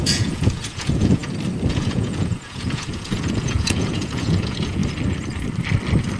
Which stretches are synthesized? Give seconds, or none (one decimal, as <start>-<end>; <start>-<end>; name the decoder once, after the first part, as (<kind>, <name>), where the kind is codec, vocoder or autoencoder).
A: 0.0-1.2 (vocoder, Vocos); 1.7-4.8